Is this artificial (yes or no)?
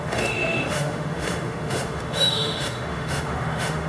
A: yes